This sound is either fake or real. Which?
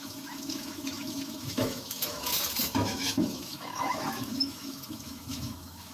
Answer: fake